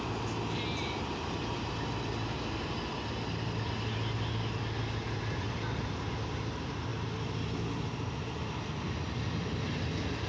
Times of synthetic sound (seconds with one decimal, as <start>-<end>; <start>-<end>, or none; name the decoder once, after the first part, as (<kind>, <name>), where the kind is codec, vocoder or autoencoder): none